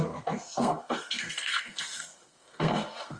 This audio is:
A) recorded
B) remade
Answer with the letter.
B